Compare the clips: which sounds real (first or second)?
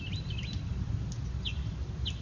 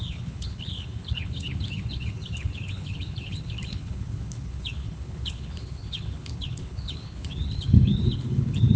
first